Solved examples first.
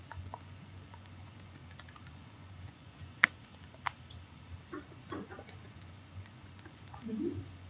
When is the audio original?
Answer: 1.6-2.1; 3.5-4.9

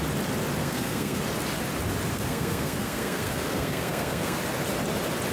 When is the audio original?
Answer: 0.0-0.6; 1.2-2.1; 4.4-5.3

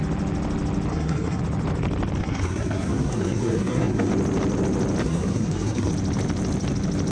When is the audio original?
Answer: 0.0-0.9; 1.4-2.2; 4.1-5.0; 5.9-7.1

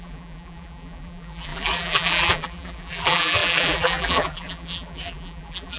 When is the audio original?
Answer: none

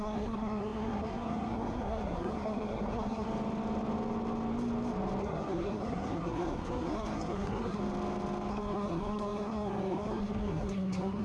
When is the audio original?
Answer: 3.3-5.2; 7.8-8.5